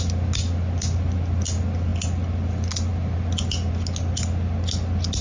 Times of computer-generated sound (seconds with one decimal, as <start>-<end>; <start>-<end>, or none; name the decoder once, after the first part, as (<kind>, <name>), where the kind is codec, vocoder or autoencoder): none